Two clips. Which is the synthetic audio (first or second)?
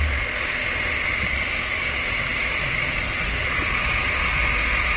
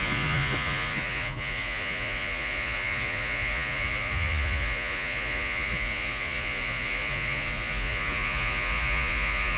second